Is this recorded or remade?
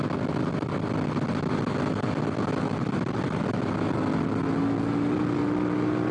recorded